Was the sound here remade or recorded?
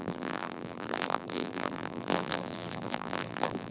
remade